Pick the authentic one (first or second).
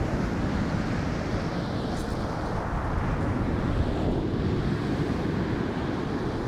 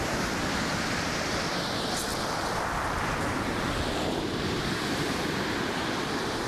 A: first